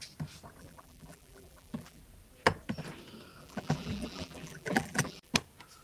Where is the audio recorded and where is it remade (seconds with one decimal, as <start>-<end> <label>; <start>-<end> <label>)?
0.0-0.6 recorded; 0.6-2.0 remade; 2.0-3.4 recorded; 3.4-5.3 remade; 5.3-5.8 recorded